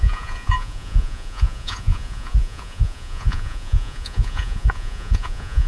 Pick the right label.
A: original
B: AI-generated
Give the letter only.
B